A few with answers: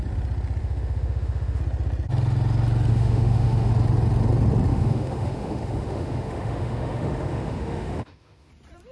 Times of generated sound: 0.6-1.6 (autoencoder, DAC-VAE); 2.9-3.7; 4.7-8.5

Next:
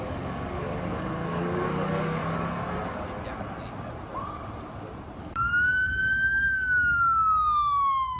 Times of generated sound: 0.0-2.2 (codec, DAC); 5.2-8.2

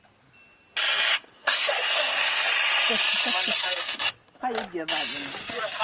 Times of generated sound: 1.1-2.5 (codec, SNAC)